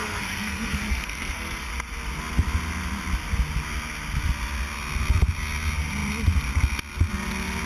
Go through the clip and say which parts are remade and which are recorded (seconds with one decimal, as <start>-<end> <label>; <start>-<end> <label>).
0.0-1.7 remade; 1.7-7.7 recorded